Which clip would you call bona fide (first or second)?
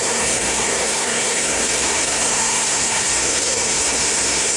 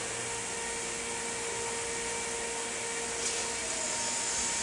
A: second